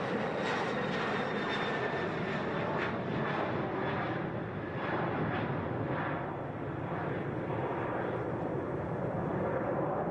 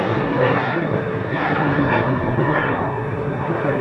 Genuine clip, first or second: first